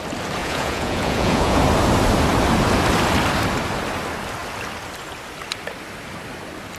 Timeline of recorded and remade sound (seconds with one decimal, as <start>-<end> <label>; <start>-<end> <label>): 0.0-0.4 recorded; 0.4-1.6 remade; 1.6-6.8 recorded